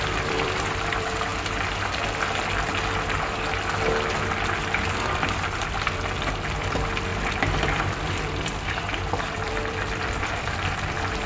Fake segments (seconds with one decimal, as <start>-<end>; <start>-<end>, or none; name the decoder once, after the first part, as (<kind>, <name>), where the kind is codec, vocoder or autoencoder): 0.0-1.3 (vocoder, BigVGAN v2); 4.6-11.3